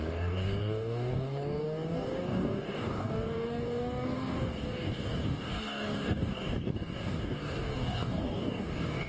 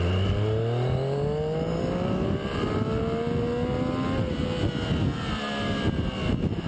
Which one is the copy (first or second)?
first